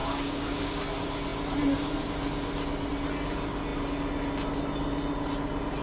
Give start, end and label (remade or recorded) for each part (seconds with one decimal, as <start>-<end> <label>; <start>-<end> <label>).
0.0-0.8 remade; 0.8-5.8 recorded